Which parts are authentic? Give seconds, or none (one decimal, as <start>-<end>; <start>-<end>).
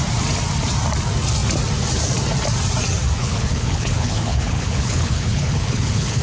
0.0-3.2